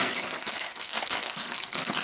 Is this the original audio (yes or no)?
no